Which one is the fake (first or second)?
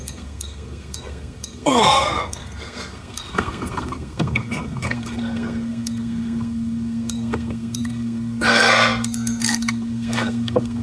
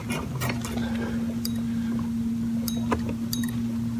first